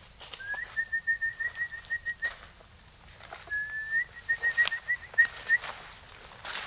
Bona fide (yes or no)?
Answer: yes